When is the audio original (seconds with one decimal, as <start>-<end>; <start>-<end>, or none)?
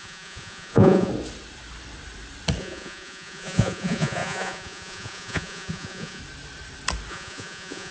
1.1-2.6; 6.2-7.1